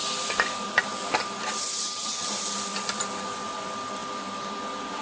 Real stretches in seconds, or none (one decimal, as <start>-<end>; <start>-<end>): 0.0-1.8; 2.3-5.0